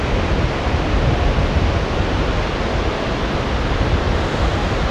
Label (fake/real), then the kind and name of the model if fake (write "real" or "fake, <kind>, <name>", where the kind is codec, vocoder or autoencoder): real